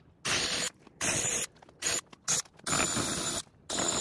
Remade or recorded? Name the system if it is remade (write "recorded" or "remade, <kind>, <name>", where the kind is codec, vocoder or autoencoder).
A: recorded